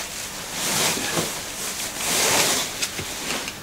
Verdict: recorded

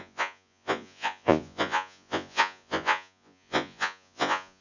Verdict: remade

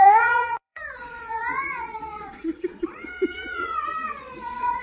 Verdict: remade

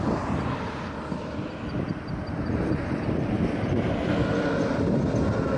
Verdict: recorded